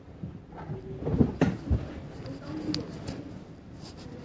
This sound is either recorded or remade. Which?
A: recorded